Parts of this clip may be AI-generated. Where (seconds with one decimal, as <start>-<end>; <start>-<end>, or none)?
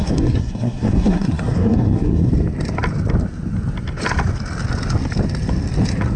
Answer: 0.0-2.3